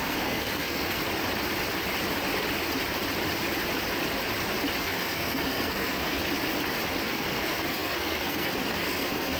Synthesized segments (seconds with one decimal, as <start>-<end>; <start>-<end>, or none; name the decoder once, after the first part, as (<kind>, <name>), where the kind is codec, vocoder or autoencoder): 0.0-1.0 (codec, SNAC); 4.8-6.2; 7.0-9.4